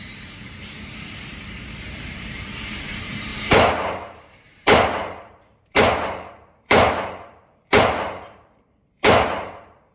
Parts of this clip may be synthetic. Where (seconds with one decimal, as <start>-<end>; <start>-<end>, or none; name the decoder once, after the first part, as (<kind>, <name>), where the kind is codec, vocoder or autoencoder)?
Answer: 0.0-9.9 (vocoder, BigVGAN v2)